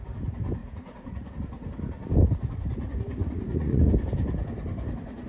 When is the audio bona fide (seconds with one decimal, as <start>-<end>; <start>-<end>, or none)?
0.0-0.6; 1.3-3.2; 3.9-5.3